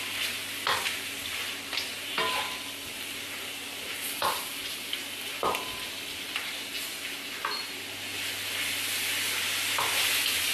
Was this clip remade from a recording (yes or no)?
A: no